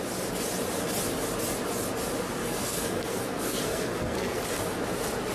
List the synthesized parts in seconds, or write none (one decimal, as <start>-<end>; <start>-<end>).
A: 2.4-4.4